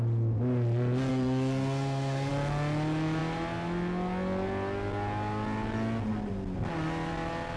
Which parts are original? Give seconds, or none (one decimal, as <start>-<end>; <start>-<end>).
0.0-1.1; 2.3-7.6